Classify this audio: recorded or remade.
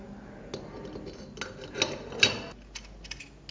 recorded